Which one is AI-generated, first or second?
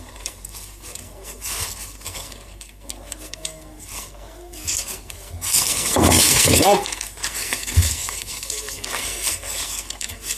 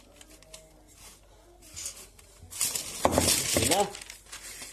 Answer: first